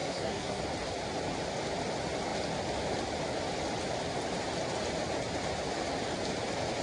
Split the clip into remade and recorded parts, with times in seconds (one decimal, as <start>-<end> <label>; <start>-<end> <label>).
0.0-0.6 remade; 0.6-6.8 recorded

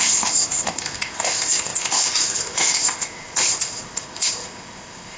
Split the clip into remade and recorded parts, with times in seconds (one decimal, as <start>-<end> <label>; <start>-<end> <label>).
0.0-5.2 remade

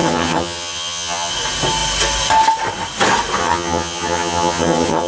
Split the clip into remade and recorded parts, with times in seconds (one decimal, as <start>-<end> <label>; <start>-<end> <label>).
0.0-1.3 remade; 1.3-3.4 recorded; 3.4-5.1 remade

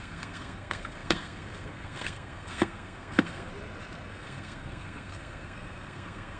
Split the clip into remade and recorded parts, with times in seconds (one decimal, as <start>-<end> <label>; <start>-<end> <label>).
0.0-3.5 remade; 3.5-4.1 recorded; 4.1-6.4 remade

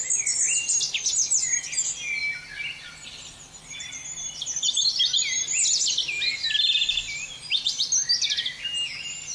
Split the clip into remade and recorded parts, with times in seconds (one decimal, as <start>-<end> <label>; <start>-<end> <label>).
0.0-9.3 recorded

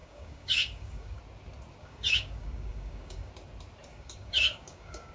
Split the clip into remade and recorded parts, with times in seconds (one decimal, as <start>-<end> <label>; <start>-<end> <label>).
0.0-1.2 remade; 1.2-1.8 recorded; 1.8-3.3 remade; 3.3-3.9 recorded; 3.9-5.1 remade

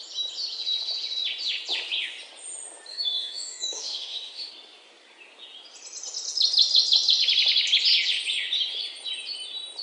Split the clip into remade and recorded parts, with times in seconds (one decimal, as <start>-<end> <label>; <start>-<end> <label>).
0.0-2.9 recorded; 2.9-4.5 remade; 4.5-9.8 recorded